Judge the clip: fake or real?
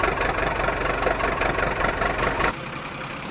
real